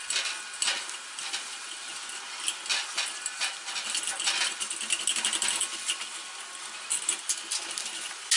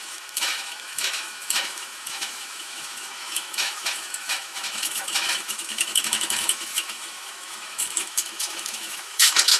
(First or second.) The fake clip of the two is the second